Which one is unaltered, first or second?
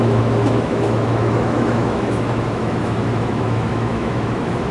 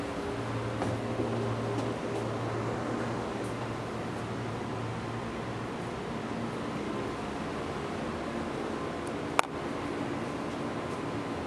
second